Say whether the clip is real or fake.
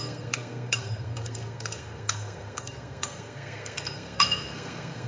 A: fake